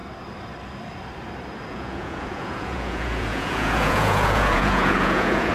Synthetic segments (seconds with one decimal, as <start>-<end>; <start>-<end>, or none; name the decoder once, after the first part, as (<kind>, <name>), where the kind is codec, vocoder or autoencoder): 1.7-5.5 (vocoder, Vocos)